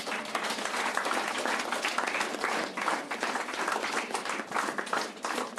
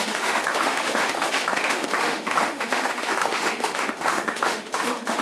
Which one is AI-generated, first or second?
second